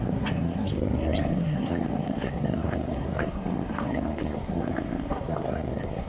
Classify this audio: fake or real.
fake